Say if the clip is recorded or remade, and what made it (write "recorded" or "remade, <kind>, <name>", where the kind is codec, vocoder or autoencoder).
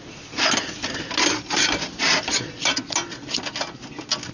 recorded